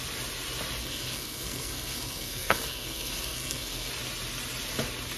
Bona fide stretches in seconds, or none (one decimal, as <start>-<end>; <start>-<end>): 0.0-0.8; 3.9-5.2